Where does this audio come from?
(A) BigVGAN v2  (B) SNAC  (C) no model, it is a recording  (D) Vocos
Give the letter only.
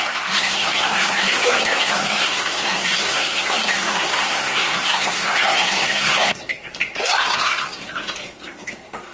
B